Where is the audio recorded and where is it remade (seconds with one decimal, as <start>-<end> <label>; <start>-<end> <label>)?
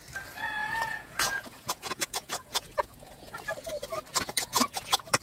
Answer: 0.0-0.6 recorded; 0.6-3.4 remade; 3.4-4.1 recorded; 4.1-5.2 remade